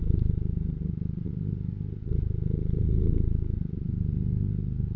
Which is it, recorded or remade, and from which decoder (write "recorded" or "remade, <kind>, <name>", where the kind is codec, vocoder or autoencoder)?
recorded